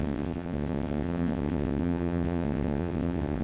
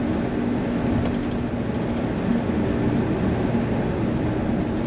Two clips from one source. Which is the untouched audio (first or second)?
second